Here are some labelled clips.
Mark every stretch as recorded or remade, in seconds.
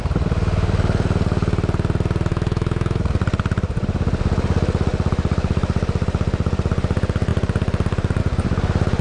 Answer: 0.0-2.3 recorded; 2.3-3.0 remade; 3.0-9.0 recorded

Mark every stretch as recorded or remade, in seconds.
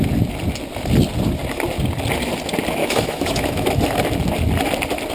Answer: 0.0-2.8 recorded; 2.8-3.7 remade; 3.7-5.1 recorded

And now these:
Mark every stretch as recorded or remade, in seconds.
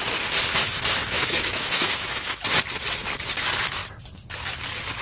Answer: 0.0-0.5 recorded; 0.5-2.4 remade; 2.4-5.0 recorded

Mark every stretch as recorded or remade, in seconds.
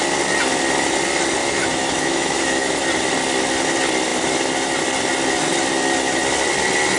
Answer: 0.0-1.4 recorded; 1.4-2.8 remade; 2.8-7.0 recorded